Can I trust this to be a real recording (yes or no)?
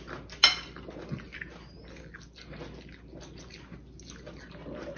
yes